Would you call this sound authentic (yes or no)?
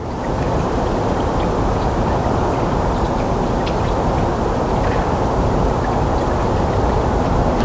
yes